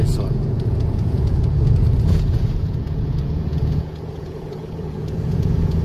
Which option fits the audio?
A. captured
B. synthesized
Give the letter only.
B